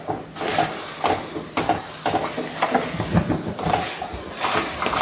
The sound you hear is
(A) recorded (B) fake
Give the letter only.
A